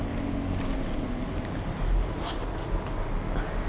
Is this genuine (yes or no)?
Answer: yes